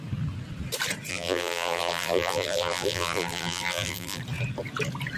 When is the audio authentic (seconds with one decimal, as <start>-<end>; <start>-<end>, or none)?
0.0-1.1; 4.2-5.2

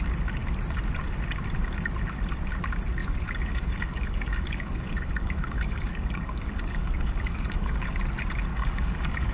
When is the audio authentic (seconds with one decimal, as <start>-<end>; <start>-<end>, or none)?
0.0-3.0; 8.0-8.5

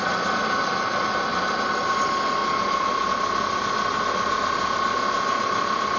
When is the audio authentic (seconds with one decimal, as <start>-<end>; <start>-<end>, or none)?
0.0-1.3; 1.9-2.4; 3.1-6.0

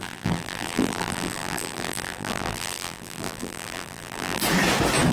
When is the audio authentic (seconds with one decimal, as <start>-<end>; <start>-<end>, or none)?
4.4-5.1